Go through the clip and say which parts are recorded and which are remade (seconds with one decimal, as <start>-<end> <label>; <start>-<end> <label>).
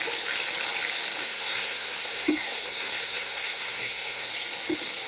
0.0-1.2 recorded; 1.2-4.3 remade; 4.3-5.1 recorded